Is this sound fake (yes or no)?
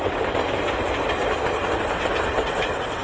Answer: no